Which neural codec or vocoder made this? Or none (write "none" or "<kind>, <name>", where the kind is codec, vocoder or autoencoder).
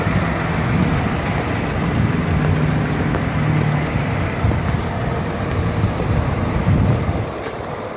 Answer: none